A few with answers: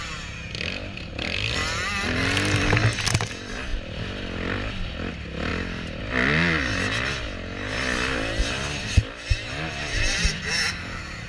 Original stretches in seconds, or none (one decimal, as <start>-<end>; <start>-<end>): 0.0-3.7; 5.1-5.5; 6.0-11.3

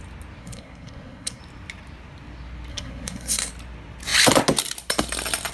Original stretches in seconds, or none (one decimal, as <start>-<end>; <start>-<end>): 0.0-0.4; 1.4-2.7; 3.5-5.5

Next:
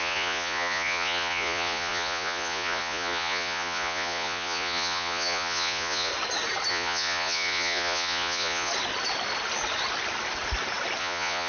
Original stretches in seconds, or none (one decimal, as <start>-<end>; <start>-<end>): 6.1-6.7; 8.7-11.0